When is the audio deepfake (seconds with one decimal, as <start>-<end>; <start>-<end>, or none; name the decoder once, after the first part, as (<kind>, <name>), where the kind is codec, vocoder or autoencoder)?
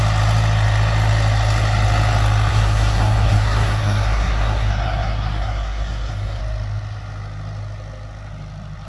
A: 2.5-6.4 (codec, SNAC)